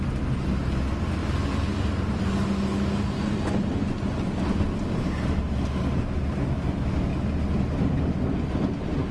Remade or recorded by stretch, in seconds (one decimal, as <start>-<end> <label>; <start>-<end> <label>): 0.0-9.1 recorded